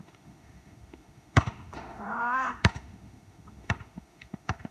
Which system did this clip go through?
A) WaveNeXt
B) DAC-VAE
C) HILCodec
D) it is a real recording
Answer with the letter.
B